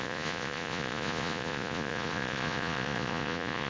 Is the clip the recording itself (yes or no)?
no